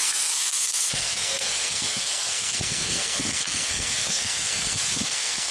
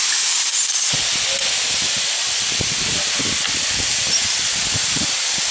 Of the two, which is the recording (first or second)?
second